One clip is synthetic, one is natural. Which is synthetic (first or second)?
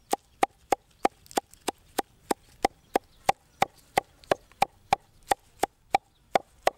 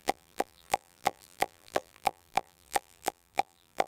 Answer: second